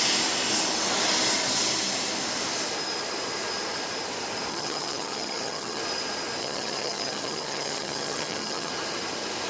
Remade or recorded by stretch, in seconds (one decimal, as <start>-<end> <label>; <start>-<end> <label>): 0.0-4.5 recorded; 4.5-5.8 remade; 5.8-6.4 recorded; 6.4-8.7 remade; 8.7-9.5 recorded

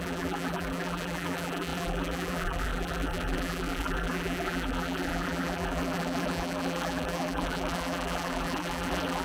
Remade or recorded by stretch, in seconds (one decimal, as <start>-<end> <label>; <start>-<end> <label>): 0.0-9.2 remade

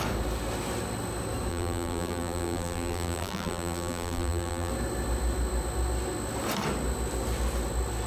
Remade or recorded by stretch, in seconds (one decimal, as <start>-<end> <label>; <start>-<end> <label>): 0.0-1.5 recorded; 1.5-4.7 remade; 4.7-8.1 recorded

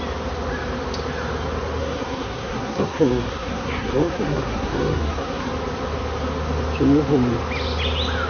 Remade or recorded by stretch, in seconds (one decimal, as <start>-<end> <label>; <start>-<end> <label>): 0.0-1.8 recorded; 1.8-5.5 remade; 5.5-8.3 recorded

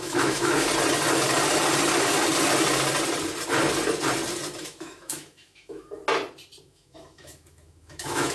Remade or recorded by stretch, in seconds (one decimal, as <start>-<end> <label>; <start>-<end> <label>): 0.0-0.7 remade; 0.7-4.6 recorded; 4.6-6.0 remade; 6.0-6.6 recorded; 6.6-8.3 remade